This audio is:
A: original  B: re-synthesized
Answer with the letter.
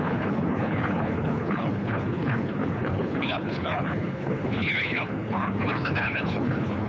B